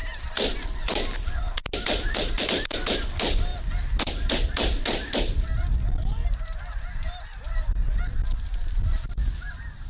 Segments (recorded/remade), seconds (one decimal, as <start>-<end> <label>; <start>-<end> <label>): 0.0-9.9 recorded